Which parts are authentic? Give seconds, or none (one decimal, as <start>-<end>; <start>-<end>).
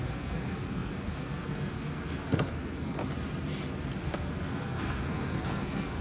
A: 3.0-4.0